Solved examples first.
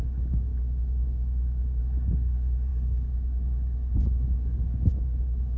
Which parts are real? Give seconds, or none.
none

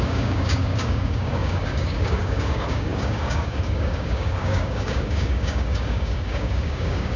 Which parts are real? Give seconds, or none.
none

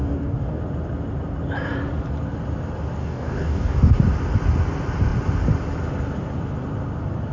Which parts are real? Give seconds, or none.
0.6-3.0; 4.0-7.3

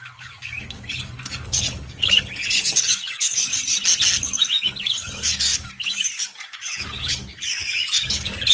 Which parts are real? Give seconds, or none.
3.5-4.2

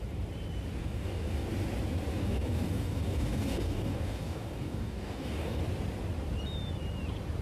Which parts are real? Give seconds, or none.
0.0-0.8; 1.5-2.1; 5.6-7.4